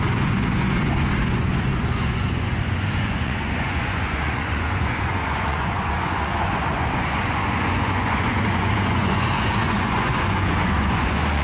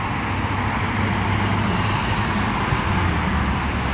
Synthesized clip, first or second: first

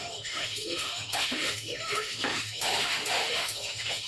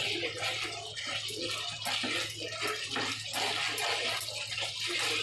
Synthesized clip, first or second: first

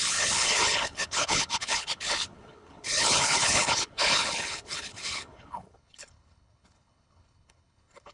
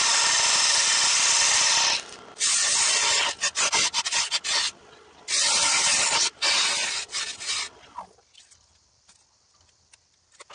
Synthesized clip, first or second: first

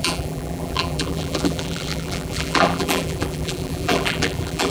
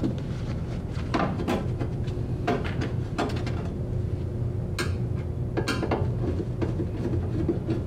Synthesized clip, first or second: first